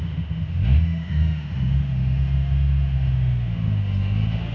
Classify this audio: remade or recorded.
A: remade